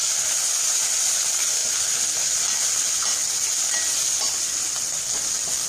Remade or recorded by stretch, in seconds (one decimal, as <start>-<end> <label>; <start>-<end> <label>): 0.0-5.7 recorded